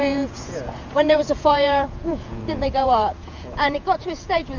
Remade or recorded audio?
remade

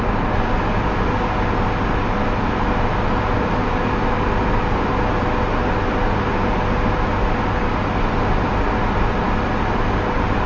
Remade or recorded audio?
recorded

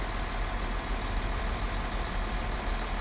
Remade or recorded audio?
recorded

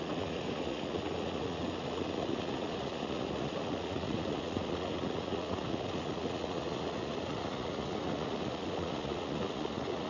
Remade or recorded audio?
remade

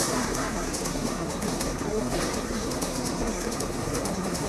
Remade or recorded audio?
remade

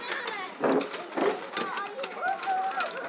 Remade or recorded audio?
recorded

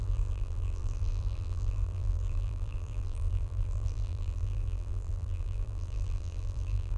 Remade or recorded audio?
remade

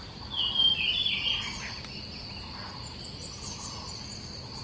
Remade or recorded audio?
recorded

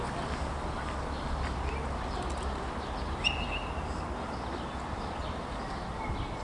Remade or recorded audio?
recorded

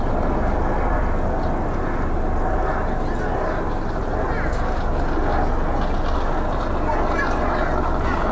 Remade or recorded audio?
recorded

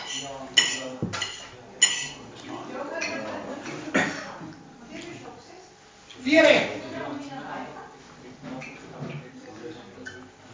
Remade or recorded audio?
recorded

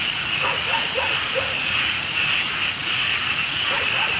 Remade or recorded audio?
remade